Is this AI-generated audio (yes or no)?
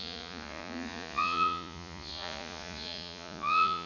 yes